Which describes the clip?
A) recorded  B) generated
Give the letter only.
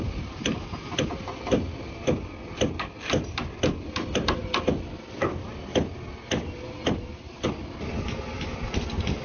A